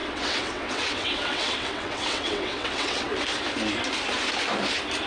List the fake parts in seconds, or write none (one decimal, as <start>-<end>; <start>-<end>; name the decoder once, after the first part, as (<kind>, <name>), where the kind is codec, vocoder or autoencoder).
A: 0.0-3.1 (vocoder, WaveNeXt)